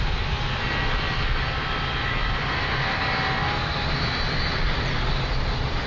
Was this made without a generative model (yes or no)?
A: yes